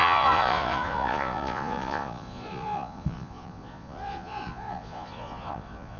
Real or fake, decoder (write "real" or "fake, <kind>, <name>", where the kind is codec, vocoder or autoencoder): fake, vocoder, Vocos